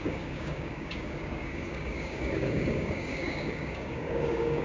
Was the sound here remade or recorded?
remade